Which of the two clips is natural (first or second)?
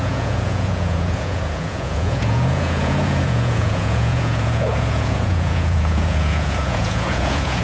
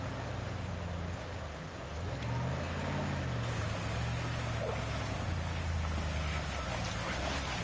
second